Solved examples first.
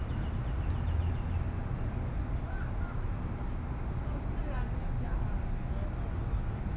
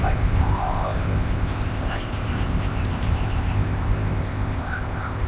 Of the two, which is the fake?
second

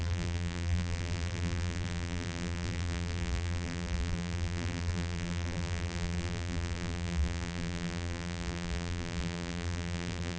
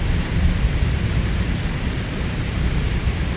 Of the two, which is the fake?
first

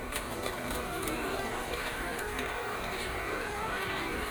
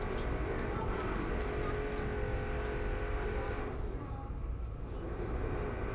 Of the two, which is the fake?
first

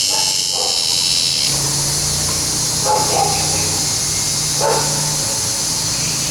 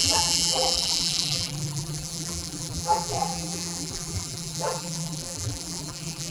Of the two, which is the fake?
second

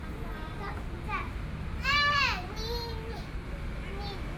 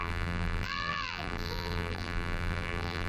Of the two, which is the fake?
second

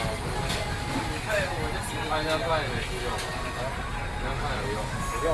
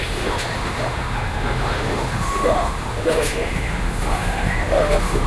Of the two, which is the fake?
second